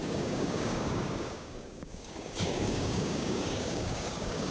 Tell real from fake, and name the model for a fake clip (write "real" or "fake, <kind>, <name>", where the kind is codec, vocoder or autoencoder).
fake, codec, DAC